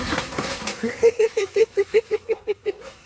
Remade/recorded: remade